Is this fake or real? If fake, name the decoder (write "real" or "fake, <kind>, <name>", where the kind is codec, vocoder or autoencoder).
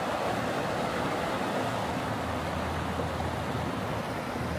real